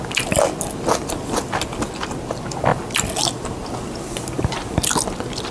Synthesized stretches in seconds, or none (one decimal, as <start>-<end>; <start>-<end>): none